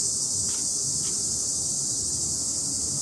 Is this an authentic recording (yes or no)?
yes